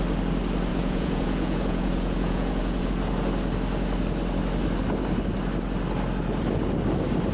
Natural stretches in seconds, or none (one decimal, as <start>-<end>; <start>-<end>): 0.0-0.7; 2.9-7.3